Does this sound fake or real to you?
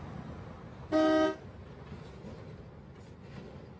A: real